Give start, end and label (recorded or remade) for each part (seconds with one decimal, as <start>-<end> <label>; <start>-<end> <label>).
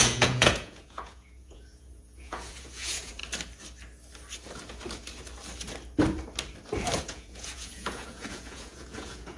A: 0.0-3.2 remade; 3.2-7.0 recorded; 7.0-9.4 remade